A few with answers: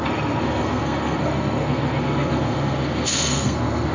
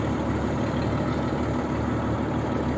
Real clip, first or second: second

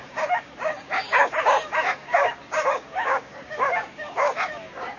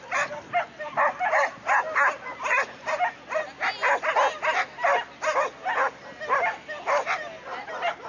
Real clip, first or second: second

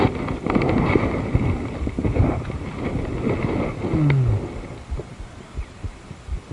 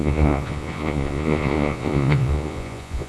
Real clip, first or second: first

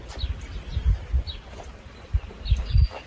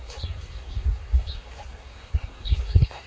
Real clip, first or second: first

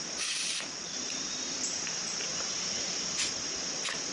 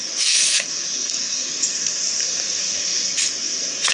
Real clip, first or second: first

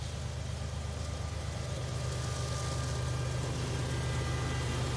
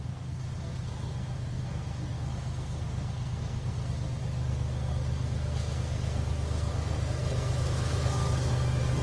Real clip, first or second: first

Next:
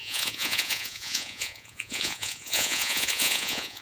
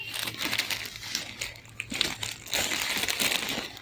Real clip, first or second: second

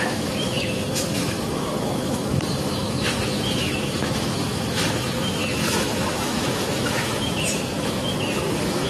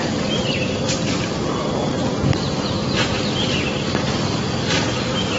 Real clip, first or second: second